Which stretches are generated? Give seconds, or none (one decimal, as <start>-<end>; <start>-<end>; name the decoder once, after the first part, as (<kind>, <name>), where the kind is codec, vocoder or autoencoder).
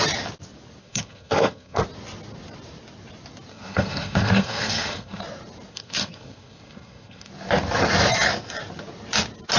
0.8-1.8 (codec, SNAC); 3.5-5.2; 5.7-7.3